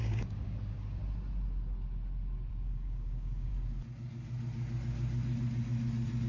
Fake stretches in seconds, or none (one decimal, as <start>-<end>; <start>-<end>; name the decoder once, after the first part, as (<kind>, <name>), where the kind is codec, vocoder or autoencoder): 0.0-1.0 (codec, DAC); 2.5-3.5